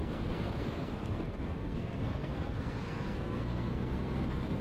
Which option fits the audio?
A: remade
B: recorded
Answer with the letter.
A